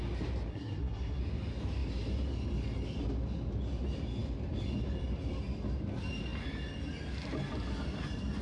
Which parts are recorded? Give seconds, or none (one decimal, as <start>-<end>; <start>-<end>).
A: 0.0-0.5; 1.2-8.4